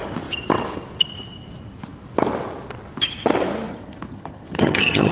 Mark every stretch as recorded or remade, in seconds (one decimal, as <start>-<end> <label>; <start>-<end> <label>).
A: 0.0-3.7 recorded; 3.7-5.1 remade